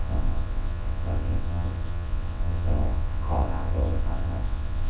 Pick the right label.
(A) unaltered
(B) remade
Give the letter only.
B